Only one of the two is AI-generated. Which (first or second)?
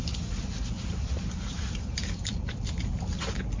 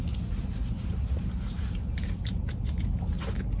first